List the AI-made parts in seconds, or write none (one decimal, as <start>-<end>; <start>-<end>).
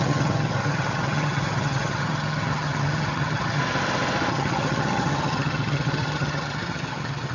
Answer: 0.0-3.6; 4.3-7.3